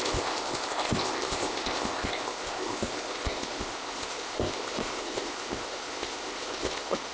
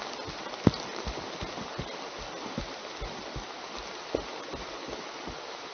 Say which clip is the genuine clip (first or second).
second